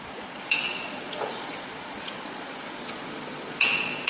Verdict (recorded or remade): remade